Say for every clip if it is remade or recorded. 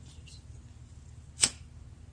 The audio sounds recorded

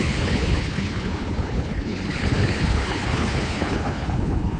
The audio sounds remade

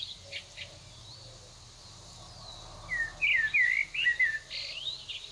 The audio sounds recorded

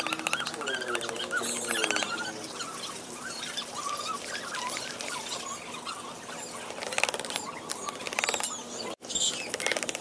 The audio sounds recorded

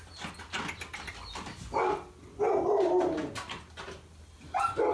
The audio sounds recorded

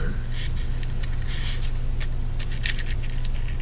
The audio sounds recorded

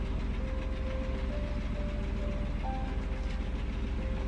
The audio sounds recorded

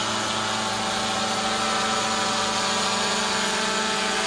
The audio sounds recorded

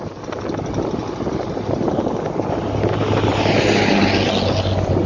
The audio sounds recorded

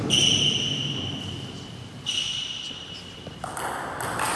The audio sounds recorded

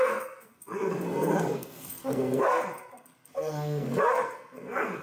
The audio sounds remade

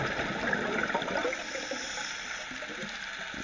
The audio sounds recorded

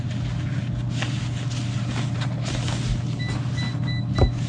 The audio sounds recorded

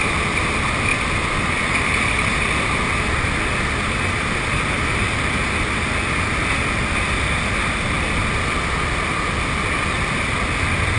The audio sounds recorded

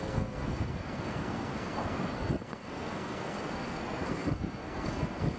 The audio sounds remade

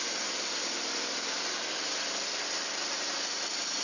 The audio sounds remade